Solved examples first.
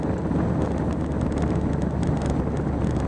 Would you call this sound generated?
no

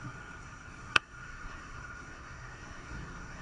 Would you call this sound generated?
yes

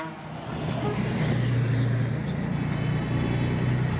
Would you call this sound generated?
no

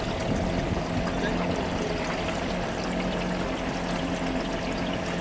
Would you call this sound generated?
no